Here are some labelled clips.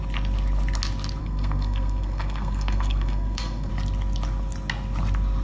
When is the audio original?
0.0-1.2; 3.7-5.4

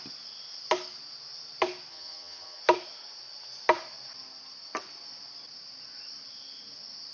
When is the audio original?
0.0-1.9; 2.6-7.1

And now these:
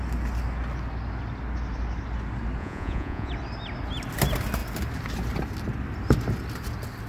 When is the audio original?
0.0-2.6; 3.3-7.1

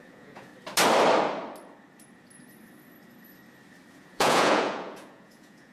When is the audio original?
0.5-3.9